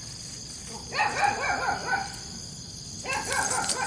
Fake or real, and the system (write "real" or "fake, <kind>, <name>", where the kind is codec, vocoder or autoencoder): real